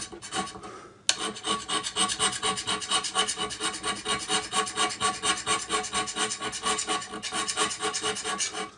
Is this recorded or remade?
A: recorded